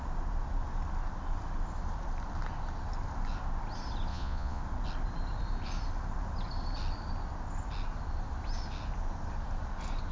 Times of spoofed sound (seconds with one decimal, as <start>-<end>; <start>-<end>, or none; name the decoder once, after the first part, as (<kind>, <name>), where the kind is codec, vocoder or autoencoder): 4.1-4.6 (vocoder, Vocos)